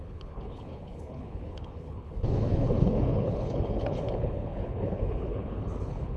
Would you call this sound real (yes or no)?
no